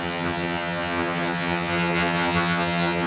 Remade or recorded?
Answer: remade